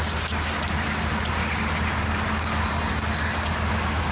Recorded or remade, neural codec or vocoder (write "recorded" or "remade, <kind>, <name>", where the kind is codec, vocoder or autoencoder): recorded